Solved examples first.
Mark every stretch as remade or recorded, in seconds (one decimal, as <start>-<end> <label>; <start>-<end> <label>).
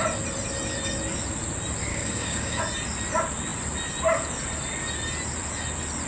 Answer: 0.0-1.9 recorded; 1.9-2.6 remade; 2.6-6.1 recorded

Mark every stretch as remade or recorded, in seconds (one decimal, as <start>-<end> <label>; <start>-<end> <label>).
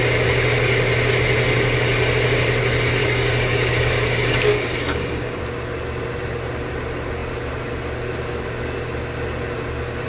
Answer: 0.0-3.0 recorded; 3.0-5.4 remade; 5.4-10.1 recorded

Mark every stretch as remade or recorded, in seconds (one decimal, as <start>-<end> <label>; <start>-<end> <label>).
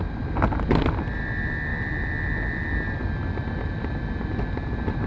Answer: 0.0-5.1 recorded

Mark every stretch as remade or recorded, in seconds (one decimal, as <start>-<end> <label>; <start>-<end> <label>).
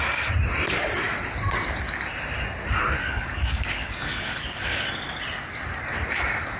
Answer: 0.0-3.0 recorded; 3.0-4.7 remade; 4.7-6.6 recorded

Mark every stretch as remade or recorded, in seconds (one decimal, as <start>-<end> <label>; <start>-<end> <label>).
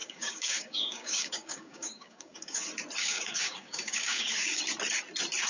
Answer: 0.0-2.6 remade; 2.6-3.0 recorded; 3.0-4.6 remade; 4.6-5.5 recorded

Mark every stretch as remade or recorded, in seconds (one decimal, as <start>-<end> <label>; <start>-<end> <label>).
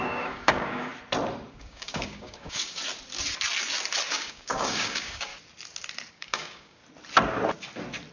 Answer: 0.0-0.9 remade; 0.9-1.5 recorded; 1.5-2.8 remade; 2.8-4.1 recorded; 4.1-5.3 remade; 5.3-6.1 recorded; 6.1-6.8 remade; 6.8-8.1 recorded